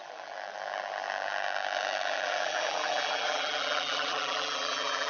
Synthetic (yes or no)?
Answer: yes